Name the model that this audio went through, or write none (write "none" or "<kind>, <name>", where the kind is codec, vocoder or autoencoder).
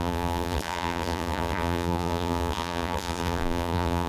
vocoder, BigVGAN v2